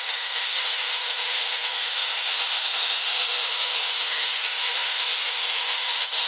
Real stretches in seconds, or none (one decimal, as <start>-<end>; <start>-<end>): none